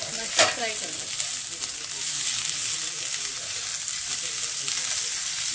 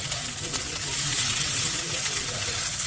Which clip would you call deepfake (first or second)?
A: second